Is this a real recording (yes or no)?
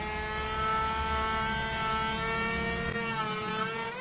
yes